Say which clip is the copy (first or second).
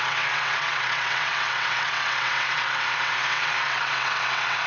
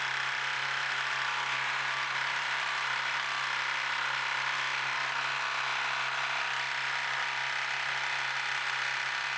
first